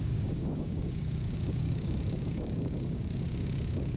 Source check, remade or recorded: remade